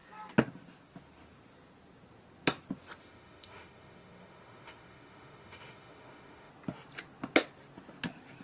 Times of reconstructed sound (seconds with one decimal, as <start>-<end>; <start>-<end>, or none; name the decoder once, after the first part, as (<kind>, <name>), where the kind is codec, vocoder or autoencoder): 3.0-6.5 (autoencoder, DAC-VAE)